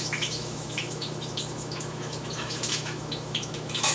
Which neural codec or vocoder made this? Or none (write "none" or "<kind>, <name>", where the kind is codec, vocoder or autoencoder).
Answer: autoencoder, DAC-VAE